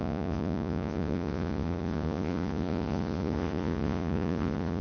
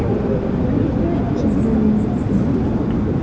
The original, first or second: second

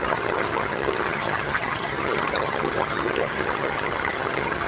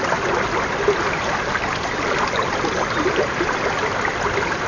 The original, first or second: second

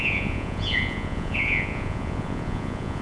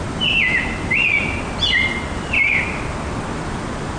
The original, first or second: second